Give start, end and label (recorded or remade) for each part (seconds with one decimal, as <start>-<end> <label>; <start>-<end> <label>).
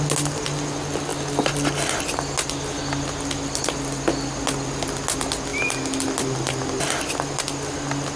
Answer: 0.0-8.2 recorded